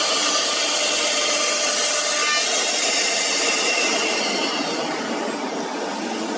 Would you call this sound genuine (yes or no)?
yes